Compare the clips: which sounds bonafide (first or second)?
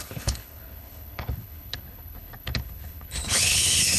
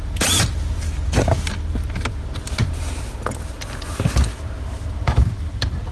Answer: second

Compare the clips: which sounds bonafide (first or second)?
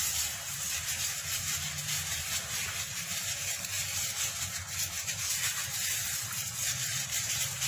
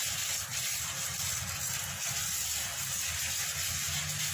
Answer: second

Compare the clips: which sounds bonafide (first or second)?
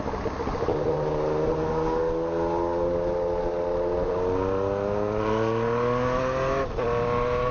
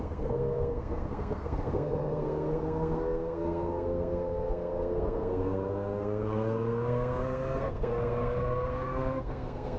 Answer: first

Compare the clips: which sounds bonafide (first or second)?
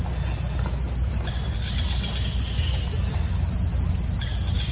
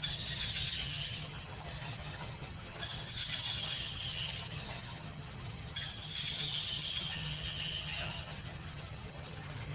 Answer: first